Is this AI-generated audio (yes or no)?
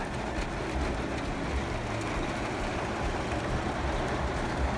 no